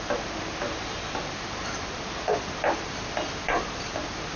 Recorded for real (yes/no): yes